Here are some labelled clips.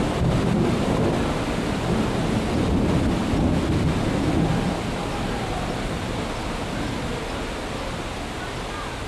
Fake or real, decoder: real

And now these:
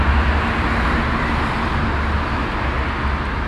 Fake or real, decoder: real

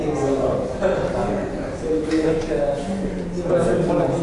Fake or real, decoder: real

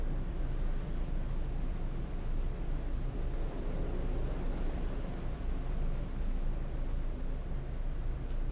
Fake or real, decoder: real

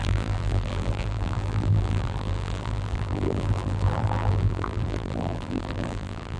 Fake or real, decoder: fake, vocoder, BigVGAN v2